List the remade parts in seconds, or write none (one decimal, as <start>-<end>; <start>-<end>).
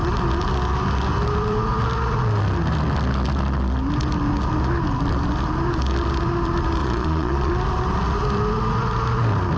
6.8-7.5